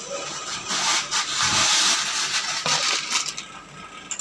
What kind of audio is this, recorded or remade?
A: recorded